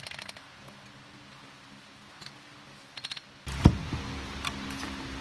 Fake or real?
real